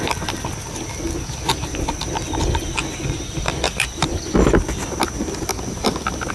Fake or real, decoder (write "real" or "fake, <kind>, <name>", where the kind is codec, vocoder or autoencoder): fake, vocoder, BigVGAN v2